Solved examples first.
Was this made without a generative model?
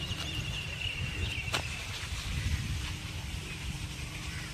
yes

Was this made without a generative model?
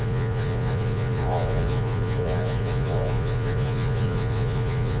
no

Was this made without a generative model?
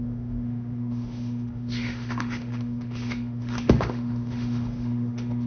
no